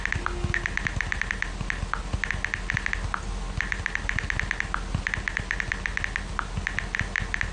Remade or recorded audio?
recorded